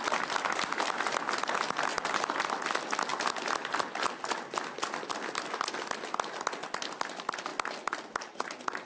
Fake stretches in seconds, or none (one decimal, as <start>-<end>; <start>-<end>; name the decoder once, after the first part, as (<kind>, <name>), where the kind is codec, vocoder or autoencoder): 1.9-2.5 (vocoder, BigVGAN v2)